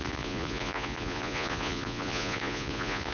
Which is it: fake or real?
fake